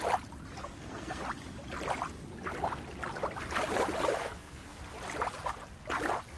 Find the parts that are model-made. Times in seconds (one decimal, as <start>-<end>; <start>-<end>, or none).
0.6-1.2; 4.2-4.8